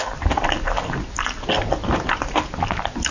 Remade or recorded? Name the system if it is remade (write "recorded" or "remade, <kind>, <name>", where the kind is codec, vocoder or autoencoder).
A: recorded